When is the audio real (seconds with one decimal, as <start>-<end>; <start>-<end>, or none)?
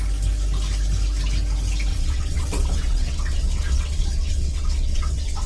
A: 0.0-1.9